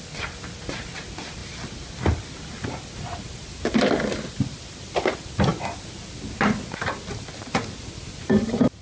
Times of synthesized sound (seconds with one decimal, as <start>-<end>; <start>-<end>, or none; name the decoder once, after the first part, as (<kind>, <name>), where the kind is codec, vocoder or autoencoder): none